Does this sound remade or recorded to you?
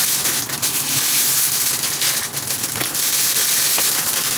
recorded